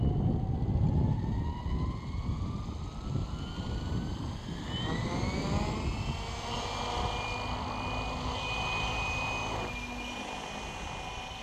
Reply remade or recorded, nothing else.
recorded